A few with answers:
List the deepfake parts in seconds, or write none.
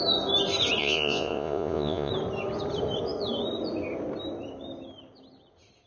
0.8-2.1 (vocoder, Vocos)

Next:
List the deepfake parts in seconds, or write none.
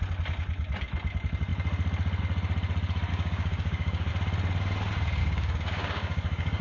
3.1-4.1 (codec, DAC); 5.2-6.6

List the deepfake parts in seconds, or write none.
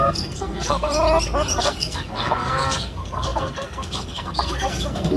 0.0-0.9 (codec, SNAC); 1.6-5.2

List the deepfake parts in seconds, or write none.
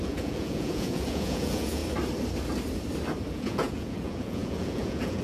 0.0-1.8 (vocoder, Vocos); 3.3-5.2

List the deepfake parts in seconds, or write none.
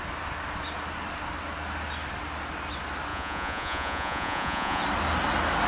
3.1-4.8 (vocoder, Vocos)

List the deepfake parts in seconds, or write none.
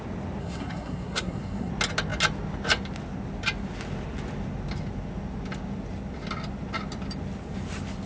0.4-1.7 (codec, SNAC)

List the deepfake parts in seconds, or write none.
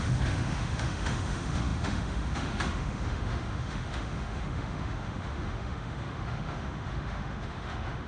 0.0-8.1 (autoencoder, DAC-VAE)